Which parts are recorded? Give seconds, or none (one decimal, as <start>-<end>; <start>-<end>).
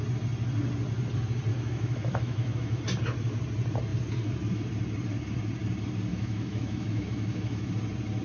0.0-1.5; 2.8-6.1; 7.7-8.2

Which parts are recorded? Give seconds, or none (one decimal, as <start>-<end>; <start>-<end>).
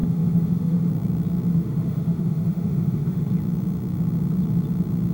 0.9-1.5; 3.3-5.1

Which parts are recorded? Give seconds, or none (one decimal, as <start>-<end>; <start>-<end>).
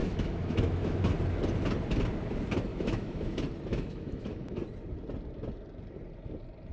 1.0-2.7; 3.3-3.7; 4.6-6.7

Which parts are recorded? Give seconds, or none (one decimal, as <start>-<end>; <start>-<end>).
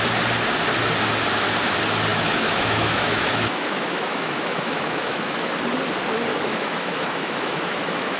0.0-2.1; 5.6-6.3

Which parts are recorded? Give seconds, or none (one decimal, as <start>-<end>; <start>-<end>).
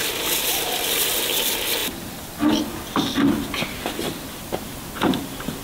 0.0-5.6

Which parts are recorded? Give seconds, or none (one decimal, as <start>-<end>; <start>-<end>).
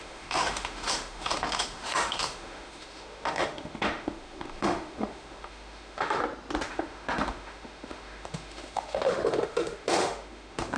6.2-6.7